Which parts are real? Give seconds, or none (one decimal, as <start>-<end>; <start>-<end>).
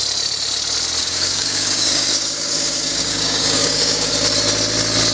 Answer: 0.0-1.0; 4.1-5.1